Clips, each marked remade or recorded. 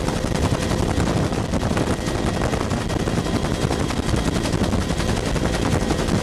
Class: recorded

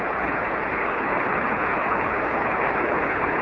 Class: remade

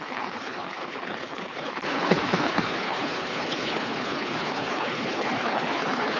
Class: remade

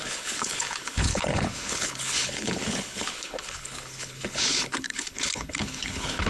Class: remade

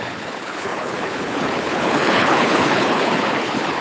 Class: remade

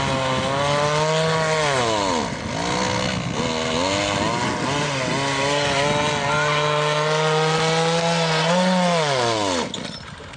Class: recorded